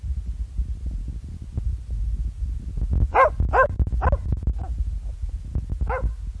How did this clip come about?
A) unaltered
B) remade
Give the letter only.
A